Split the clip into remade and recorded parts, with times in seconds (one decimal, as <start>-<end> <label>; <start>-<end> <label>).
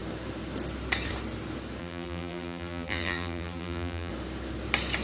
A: 0.0-1.8 recorded; 1.8-4.1 remade; 4.1-5.0 recorded